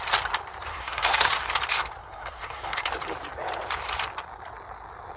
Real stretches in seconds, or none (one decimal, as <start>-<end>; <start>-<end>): 0.0-0.7; 1.3-2.0; 2.9-5.2